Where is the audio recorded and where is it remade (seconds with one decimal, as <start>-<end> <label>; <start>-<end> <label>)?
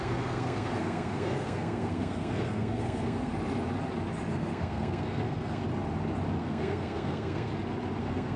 0.0-3.3 remade; 3.3-4.3 recorded; 4.3-5.6 remade; 5.6-6.4 recorded; 6.4-7.5 remade; 7.5-8.0 recorded; 8.0-8.4 remade